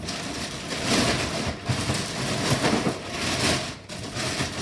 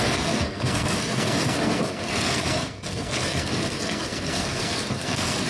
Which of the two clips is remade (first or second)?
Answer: second